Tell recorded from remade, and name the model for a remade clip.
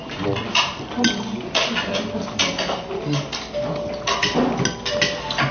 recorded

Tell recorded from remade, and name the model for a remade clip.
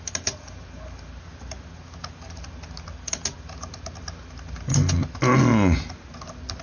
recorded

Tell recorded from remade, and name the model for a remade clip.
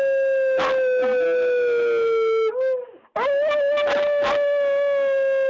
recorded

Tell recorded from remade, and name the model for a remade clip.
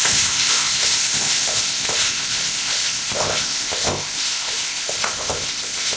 remade, codec, ZipCodec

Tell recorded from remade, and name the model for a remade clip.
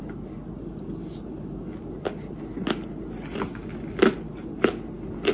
recorded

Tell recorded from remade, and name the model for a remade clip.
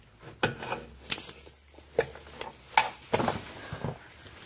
recorded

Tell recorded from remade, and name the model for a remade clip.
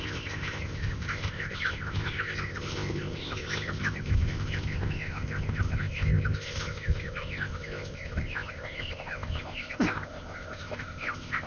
remade, codec, ZipCodec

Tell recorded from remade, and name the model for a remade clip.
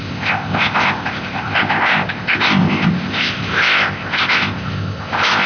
remade, codec, ZipCodec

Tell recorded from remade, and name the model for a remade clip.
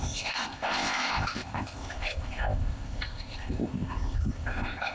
remade, codec, ZipCodec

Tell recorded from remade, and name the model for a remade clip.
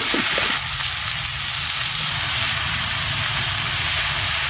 recorded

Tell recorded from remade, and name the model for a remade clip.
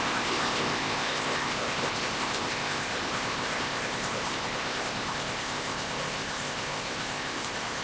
remade, codec, ZipCodec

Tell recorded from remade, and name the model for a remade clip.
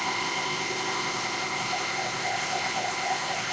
remade, codec, ZipCodec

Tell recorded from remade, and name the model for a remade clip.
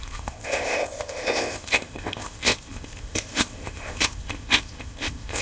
remade, codec, ZipCodec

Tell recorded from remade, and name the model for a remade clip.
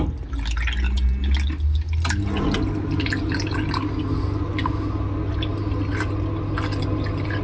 recorded